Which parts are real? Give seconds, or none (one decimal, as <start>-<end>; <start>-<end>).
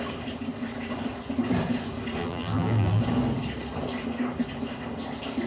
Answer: 0.0-2.2; 3.0-5.5